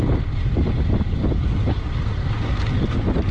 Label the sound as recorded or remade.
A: recorded